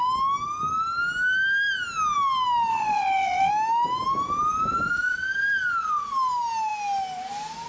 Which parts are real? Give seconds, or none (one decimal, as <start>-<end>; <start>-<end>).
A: 0.0-2.7; 3.5-7.7